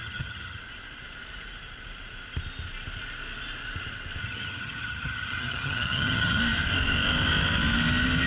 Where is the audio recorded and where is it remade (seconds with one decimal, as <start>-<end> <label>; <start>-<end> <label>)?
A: 0.0-0.6 remade; 0.6-4.2 recorded; 4.2-6.4 remade; 6.4-8.3 recorded